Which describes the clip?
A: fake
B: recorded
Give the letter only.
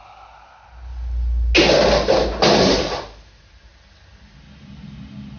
B